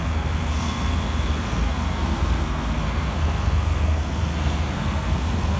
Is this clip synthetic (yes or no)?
yes